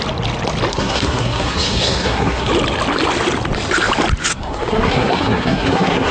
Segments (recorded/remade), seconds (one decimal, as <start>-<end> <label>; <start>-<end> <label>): 0.0-0.7 recorded; 0.7-2.5 remade; 2.5-4.3 recorded; 4.3-6.1 remade